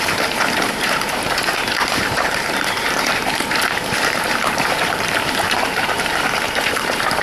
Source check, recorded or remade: remade